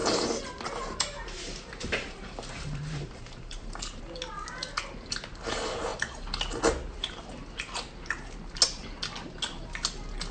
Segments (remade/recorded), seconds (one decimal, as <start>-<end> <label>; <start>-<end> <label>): 0.0-4.0 remade; 4.0-10.3 recorded